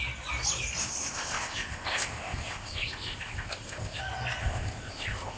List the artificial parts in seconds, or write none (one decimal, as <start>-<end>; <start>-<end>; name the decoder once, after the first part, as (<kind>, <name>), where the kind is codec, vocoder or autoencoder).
0.8-4.0 (codec, ZipCodec); 4.4-5.4